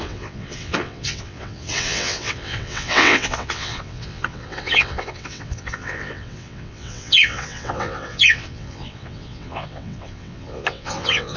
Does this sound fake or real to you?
fake